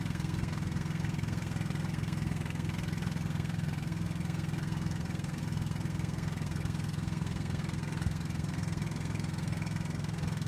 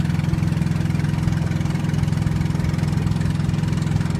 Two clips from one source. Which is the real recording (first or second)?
second